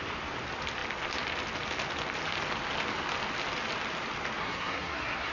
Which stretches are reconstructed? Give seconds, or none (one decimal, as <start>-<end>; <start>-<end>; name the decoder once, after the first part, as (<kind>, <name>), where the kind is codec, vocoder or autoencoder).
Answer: 4.4-5.3 (codec, SNAC)